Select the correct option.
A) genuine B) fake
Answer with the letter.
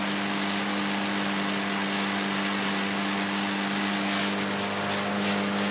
A